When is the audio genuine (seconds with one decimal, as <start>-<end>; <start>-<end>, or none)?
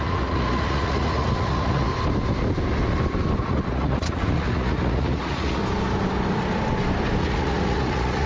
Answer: 1.9-3.4; 5.6-7.2